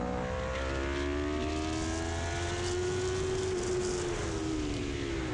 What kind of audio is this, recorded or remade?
recorded